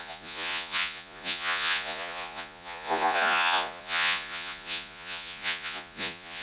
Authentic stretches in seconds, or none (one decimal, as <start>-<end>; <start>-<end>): none